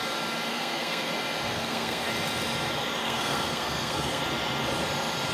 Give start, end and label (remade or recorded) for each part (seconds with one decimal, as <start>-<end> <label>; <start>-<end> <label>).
0.0-0.5 recorded; 0.5-1.1 remade; 1.1-1.5 recorded; 1.5-2.1 remade; 2.1-3.0 recorded; 3.0-4.2 remade; 4.2-5.3 recorded